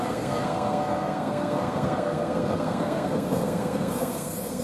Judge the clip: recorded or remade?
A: remade